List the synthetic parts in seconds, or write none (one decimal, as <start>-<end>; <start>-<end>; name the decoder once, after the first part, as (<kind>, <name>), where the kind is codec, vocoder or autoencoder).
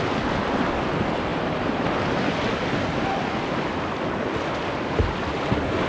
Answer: none